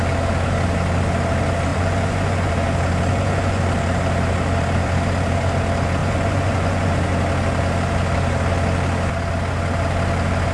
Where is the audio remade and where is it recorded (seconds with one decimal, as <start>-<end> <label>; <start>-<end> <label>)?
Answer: 0.0-1.7 recorded; 1.7-2.5 remade; 2.5-3.1 recorded; 3.1-3.6 remade; 3.6-6.0 recorded; 6.0-6.9 remade; 6.9-10.5 recorded